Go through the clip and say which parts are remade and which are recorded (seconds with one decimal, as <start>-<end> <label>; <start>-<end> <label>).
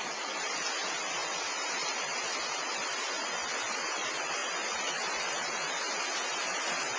0.0-7.0 recorded